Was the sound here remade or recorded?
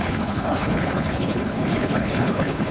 remade